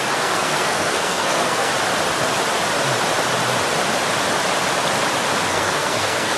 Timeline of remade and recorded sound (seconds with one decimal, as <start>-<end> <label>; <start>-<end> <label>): 0.0-1.7 remade; 1.7-5.5 recorded; 5.5-6.4 remade